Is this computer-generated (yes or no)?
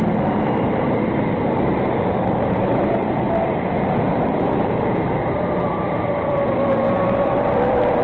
yes